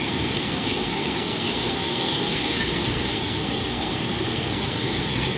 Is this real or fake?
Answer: fake